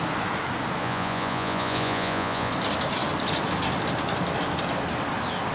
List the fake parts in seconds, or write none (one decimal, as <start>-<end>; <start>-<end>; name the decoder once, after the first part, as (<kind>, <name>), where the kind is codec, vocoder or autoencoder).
0.8-2.5 (vocoder, Vocos)